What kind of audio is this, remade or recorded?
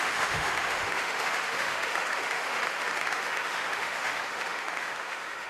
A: remade